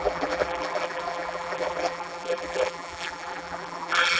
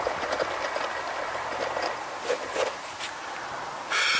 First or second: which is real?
second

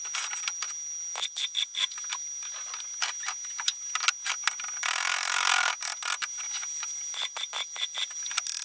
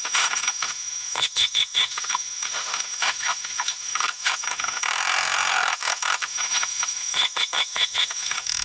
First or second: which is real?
first